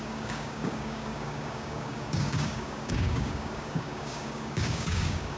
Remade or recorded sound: remade